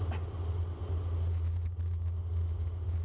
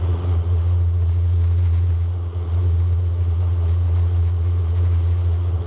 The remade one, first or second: second